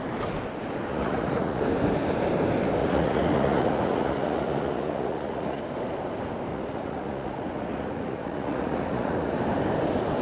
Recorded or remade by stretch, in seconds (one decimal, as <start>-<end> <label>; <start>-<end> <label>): 0.0-0.9 recorded; 0.9-1.6 remade; 1.6-2.8 recorded; 2.8-5.6 remade; 5.6-6.5 recorded; 6.5-9.4 remade; 9.4-10.2 recorded